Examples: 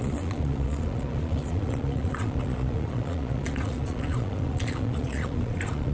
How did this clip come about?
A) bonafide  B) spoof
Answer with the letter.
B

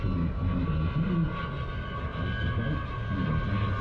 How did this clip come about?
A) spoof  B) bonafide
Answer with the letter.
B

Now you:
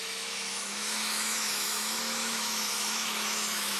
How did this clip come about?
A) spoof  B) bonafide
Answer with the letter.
A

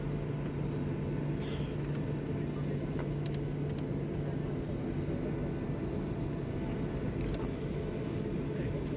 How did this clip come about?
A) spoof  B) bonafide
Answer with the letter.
B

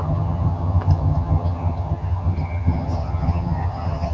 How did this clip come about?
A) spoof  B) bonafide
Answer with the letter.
A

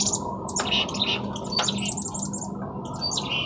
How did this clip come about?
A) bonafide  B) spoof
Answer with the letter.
A